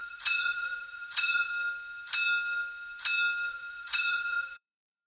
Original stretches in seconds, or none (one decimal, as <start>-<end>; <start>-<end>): 1.5-3.5